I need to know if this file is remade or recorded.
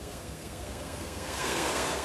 remade